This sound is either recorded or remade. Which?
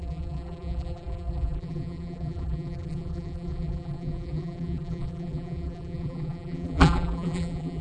remade